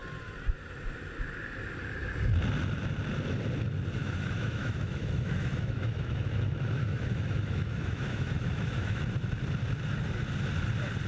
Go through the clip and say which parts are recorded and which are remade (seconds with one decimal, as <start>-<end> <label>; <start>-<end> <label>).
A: 0.0-4.0 recorded; 4.0-9.0 remade; 9.0-11.1 recorded